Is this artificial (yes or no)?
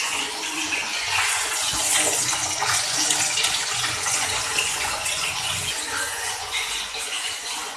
yes